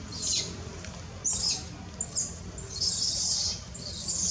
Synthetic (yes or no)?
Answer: no